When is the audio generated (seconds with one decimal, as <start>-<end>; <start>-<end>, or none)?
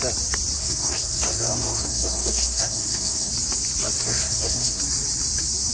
0.6-3.3; 4.0-4.8